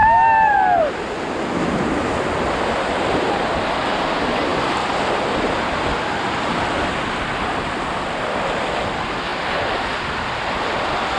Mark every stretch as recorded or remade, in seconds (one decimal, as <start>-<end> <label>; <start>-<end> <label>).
0.0-11.2 recorded